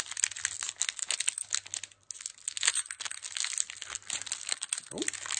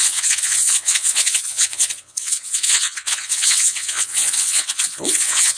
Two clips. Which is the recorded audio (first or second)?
first